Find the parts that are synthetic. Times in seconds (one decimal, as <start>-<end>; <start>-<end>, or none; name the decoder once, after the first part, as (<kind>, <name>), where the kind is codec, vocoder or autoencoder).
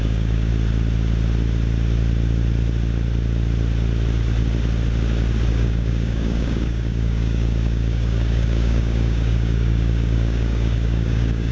0.0-0.5 (codec, DAC); 5.5-11.5